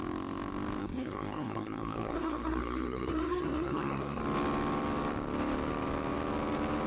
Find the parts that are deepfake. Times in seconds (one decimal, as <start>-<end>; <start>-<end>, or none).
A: 0.8-4.2